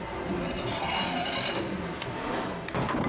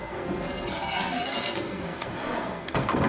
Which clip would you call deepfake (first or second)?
second